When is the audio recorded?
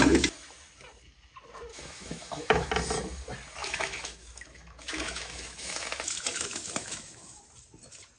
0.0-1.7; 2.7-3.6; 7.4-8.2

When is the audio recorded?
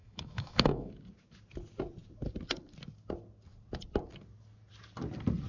0.9-5.5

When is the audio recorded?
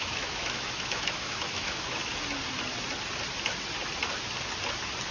2.0-5.1